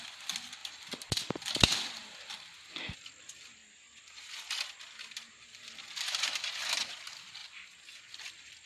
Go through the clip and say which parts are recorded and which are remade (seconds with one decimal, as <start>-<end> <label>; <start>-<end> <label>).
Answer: 0.0-3.6 remade; 3.6-5.3 recorded; 5.3-7.4 remade; 7.4-8.0 recorded; 8.0-8.7 remade